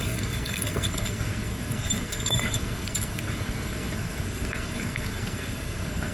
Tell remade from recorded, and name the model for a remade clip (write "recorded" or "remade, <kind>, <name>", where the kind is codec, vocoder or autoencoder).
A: remade, codec, SNAC